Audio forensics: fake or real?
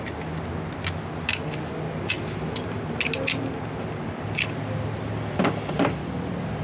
real